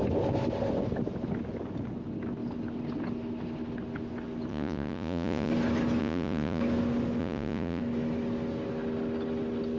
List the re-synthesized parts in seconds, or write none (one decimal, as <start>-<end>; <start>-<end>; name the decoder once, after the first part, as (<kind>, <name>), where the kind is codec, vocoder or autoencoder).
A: 4.5-5.5 (vocoder, Vocos); 6.0-6.6; 7.2-7.8